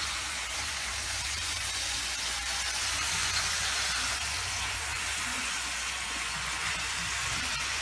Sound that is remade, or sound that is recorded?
remade